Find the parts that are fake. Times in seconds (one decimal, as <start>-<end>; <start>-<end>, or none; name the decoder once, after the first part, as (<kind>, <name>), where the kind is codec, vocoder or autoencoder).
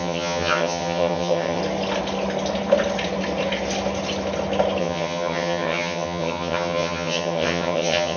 0.0-1.6 (vocoder, HiFi-GAN); 4.8-8.2